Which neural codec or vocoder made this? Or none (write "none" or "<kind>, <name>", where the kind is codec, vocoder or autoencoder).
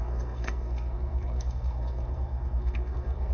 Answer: codec, SNAC